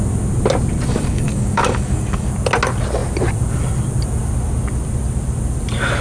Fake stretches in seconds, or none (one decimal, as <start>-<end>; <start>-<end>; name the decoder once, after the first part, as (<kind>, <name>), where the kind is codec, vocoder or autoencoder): 0.9-2.3 (codec, DAC)